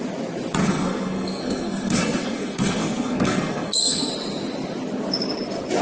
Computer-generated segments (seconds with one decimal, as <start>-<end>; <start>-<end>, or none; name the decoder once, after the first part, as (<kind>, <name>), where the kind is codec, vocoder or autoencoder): 0.6-4.1 (codec, SNAC)